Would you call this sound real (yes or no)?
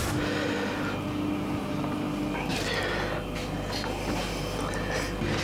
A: yes